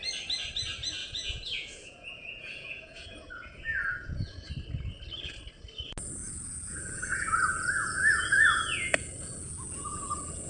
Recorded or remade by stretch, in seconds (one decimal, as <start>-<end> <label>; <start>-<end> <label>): 0.0-1.0 recorded; 1.0-4.5 remade; 4.5-6.2 recorded; 6.2-10.5 remade